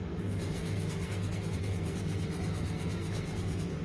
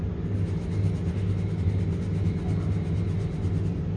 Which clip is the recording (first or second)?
second